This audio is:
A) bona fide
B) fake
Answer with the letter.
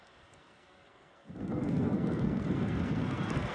B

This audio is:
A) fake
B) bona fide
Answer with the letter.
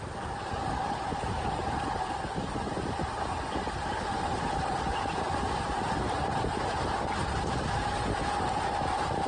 B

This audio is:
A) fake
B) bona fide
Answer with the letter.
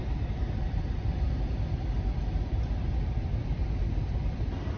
A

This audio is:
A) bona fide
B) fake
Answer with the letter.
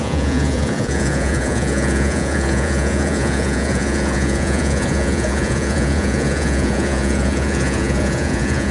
B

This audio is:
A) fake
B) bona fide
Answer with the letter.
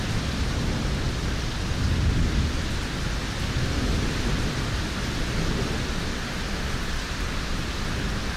B